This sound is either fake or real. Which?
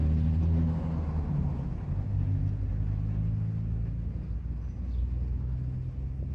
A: real